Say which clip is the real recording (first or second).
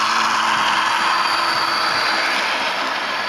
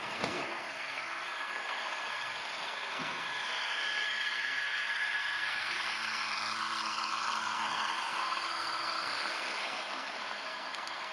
first